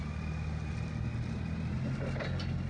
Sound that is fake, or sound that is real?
real